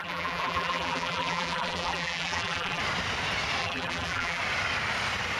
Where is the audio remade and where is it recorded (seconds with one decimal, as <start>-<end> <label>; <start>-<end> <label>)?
0.0-2.8 remade; 2.8-3.6 recorded; 3.6-4.4 remade; 4.4-5.4 recorded